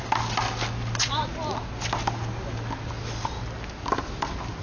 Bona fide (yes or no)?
yes